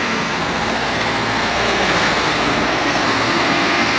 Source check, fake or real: fake